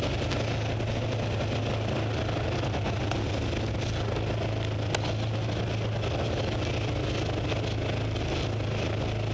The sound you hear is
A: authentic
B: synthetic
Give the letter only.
A